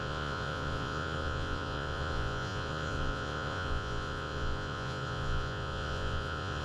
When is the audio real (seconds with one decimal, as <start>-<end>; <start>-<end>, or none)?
none